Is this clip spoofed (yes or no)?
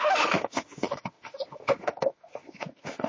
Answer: yes